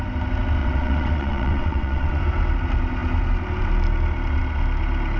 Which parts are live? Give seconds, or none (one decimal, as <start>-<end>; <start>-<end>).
0.0-0.6; 2.2-5.2